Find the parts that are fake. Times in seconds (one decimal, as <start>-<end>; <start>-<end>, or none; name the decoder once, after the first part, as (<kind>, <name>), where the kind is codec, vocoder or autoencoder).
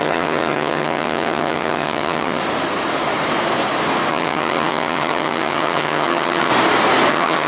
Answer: 0.0-2.4 (vocoder, HiFi-GAN); 4.1-6.5; 7.1-7.5